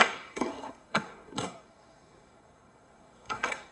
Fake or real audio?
fake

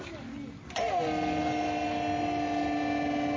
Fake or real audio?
real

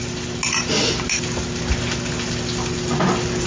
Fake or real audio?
real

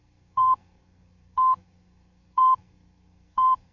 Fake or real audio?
fake